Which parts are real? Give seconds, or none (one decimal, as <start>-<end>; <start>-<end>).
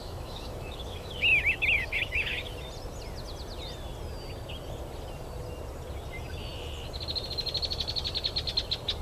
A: 2.5-9.0